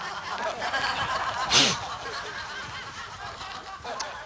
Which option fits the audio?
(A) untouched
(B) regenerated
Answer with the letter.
A